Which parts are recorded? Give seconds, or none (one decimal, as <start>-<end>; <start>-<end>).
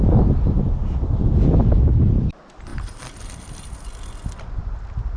0.0-5.2